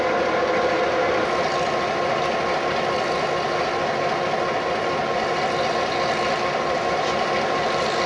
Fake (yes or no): no